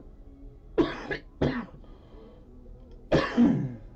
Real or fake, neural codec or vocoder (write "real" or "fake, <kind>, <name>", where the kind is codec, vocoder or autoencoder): fake, vocoder, BigVGAN v2